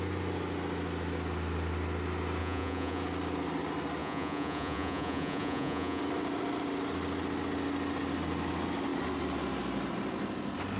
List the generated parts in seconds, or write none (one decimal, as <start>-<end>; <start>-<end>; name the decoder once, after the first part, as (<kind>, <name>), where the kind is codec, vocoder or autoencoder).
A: 2.4-3.0 (vocoder, Vocos); 4.0-6.0